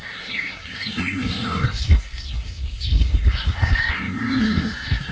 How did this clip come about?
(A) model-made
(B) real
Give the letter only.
A